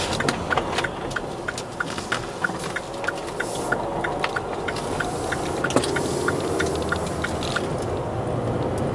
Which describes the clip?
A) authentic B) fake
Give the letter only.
A